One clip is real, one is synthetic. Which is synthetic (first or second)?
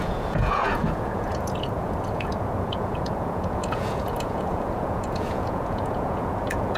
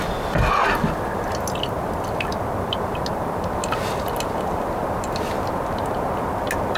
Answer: first